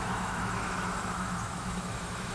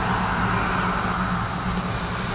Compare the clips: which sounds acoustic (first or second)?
second